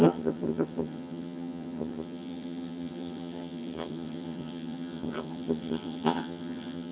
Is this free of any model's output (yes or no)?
no